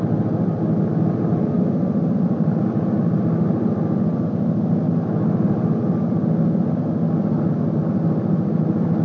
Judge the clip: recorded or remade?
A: recorded